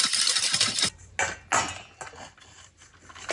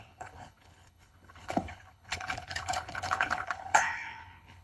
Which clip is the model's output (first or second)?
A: second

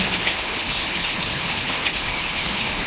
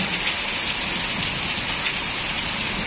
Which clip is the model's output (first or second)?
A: first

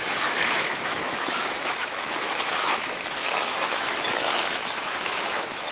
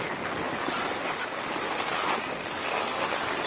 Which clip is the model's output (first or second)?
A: first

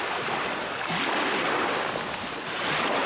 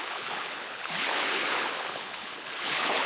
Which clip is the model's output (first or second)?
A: second